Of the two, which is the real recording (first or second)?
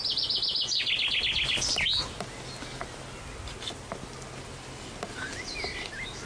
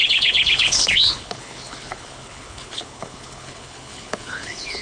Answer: first